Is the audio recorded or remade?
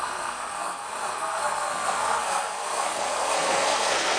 remade